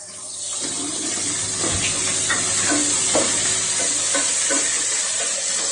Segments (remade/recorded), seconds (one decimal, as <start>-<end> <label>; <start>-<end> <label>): 0.0-5.7 recorded